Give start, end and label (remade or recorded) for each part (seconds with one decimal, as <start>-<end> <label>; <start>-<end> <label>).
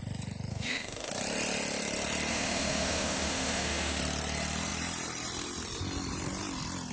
0.0-0.5 recorded; 0.5-1.1 remade; 1.1-2.3 recorded; 2.3-4.0 remade; 4.0-6.9 recorded